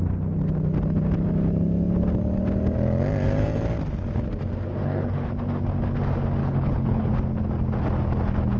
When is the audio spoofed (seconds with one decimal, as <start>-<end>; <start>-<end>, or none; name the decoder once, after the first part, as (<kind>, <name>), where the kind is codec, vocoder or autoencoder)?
4.8-5.3 (codec, HILCodec); 6.4-7.1